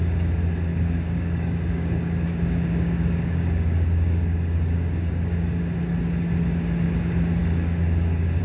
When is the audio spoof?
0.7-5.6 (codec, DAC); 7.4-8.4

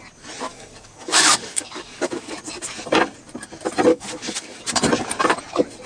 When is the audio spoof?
0.5-2.3 (codec, DAC); 3.9-4.6

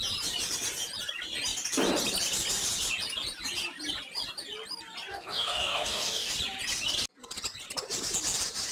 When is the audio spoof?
5.1-6.3 (codec, DAC)

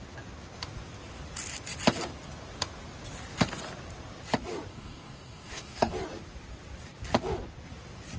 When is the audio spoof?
4.7-5.9 (codec, DAC)

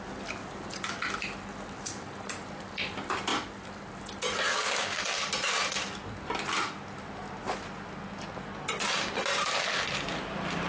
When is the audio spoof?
4.5-5.0 (codec, DAC)

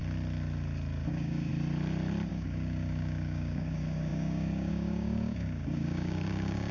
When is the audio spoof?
1.1-1.5 (codec, DAC); 2.3-6.7